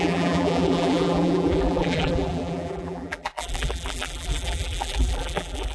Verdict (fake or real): fake